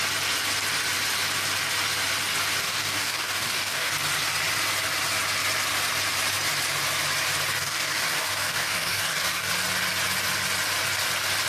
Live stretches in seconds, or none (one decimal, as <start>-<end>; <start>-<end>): 0.0-2.6; 3.9-7.6; 9.5-11.5